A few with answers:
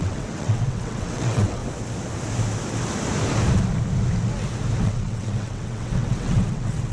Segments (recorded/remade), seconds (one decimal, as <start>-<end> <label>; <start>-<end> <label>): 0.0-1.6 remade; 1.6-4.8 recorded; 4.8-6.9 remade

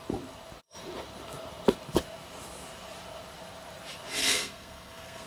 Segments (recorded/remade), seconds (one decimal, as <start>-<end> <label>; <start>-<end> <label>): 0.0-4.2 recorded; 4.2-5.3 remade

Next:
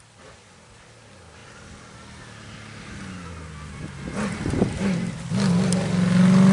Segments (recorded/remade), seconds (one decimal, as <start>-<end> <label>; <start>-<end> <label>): 0.0-6.5 recorded